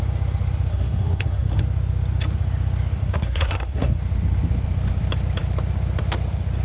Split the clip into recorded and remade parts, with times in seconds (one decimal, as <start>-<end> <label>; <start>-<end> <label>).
0.0-0.7 recorded; 0.7-1.6 remade; 1.6-3.0 recorded; 3.0-4.0 remade; 4.0-6.6 recorded